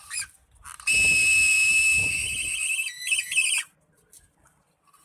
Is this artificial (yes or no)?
no